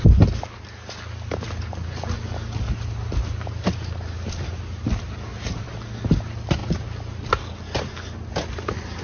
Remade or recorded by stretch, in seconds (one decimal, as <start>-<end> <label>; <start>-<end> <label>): 0.0-9.0 recorded